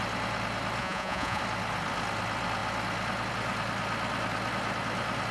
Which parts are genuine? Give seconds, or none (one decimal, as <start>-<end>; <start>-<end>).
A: 0.0-0.8; 1.4-5.3